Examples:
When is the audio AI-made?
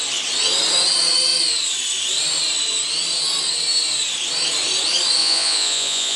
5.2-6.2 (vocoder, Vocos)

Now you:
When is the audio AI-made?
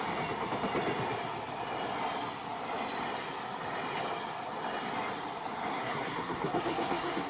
5.7-7.3 (codec, SNAC)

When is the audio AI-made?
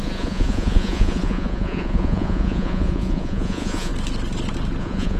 0.0-3.9 (vocoder, Vocos); 4.8-5.2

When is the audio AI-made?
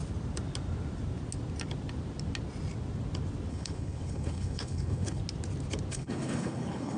3.5-5.2 (codec, HILCodec); 5.9-7.0